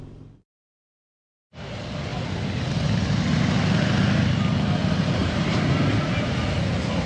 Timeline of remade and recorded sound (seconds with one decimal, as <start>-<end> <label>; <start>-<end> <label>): 0.0-4.8 recorded; 4.8-5.6 remade; 5.6-7.1 recorded